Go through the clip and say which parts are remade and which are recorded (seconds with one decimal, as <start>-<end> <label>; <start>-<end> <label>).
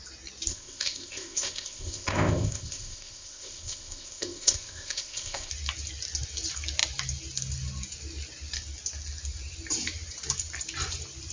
0.0-0.5 recorded; 0.5-5.5 remade; 5.5-11.3 recorded